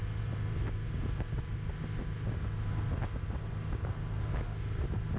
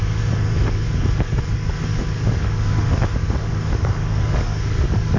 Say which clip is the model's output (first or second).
second